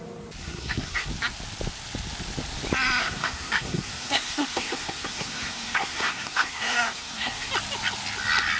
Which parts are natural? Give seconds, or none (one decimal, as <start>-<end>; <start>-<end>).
0.0-0.4; 1.1-3.0; 7.5-8.6